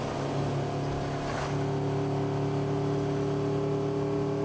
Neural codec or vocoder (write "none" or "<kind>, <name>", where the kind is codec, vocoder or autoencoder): none